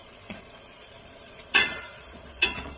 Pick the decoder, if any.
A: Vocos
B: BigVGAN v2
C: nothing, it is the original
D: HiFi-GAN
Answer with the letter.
A